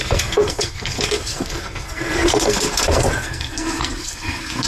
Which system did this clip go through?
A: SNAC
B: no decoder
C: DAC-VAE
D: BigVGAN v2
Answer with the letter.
A